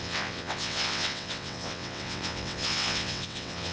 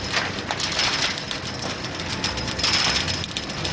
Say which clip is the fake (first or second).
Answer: first